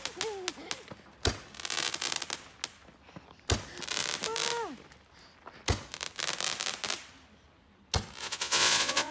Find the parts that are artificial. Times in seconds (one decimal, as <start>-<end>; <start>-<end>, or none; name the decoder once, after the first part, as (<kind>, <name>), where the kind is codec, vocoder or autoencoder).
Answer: 8.2-9.1 (vocoder, Vocos)